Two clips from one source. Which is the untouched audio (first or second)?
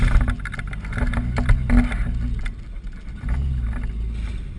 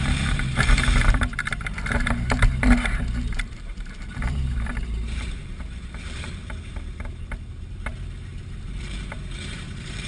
first